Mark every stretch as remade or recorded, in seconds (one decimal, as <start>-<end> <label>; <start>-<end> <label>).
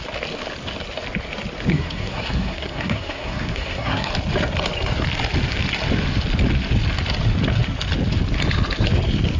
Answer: 0.0-1.7 recorded; 1.7-4.1 remade; 4.1-9.4 recorded